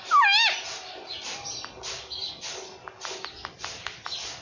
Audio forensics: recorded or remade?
recorded